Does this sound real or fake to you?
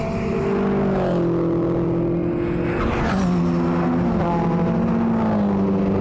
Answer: real